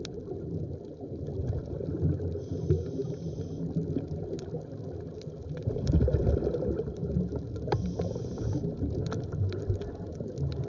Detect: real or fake real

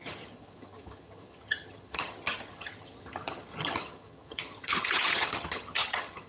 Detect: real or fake fake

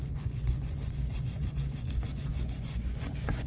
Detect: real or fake fake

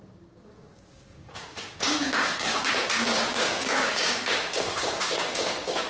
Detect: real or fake fake